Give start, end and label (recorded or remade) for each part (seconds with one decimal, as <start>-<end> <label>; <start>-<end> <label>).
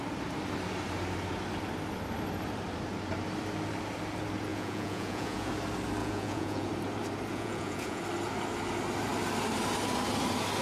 0.0-4.5 recorded; 4.5-5.5 remade; 5.5-6.0 recorded; 6.0-6.7 remade; 6.7-7.3 recorded; 7.3-8.0 remade; 8.0-10.6 recorded